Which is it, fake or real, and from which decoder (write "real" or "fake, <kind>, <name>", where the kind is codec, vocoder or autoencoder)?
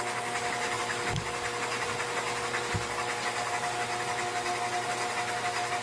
real